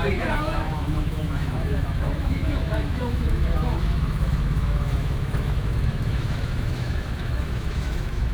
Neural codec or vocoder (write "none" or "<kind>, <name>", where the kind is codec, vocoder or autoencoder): autoencoder, DAC-VAE